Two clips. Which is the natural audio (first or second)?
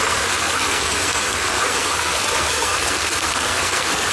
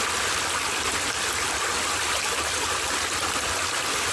second